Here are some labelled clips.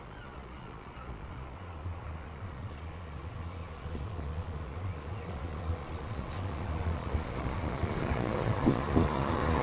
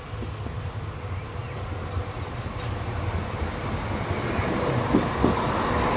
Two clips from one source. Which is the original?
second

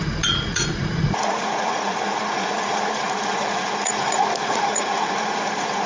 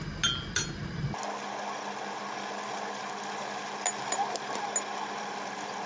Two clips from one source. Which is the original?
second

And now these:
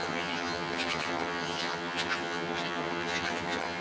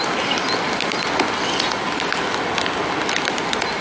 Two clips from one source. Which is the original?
second